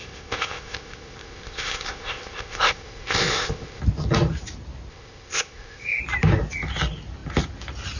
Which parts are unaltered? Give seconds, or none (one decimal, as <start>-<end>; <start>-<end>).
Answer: 3.8-4.9; 6.0-8.0